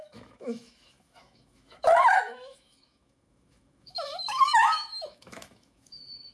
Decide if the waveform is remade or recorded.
remade